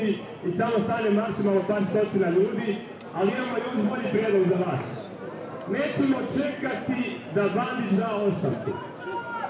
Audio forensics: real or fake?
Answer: real